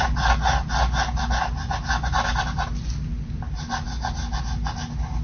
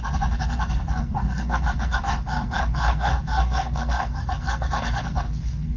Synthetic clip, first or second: second